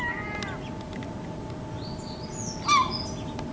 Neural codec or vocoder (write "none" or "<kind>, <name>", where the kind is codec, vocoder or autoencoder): none